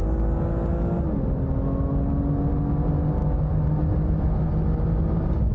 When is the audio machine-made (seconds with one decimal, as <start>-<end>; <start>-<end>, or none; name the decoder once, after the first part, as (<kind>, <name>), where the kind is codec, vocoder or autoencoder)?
3.2-3.8 (autoencoder, DAC-VAE)